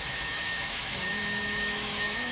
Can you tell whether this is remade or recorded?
remade